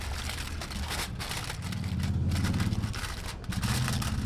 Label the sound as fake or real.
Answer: real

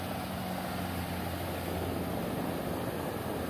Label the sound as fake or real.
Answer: real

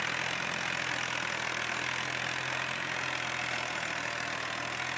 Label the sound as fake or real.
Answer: real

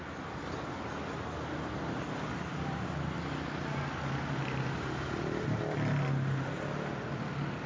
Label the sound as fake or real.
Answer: real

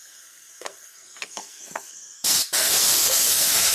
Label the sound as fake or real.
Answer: fake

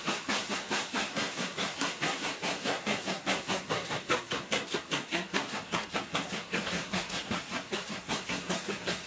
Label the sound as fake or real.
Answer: fake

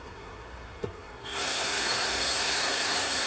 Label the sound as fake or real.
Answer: fake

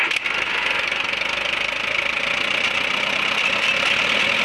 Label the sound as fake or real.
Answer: real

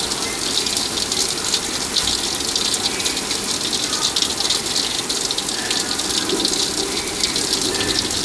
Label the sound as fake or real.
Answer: real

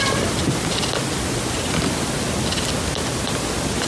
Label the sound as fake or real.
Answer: real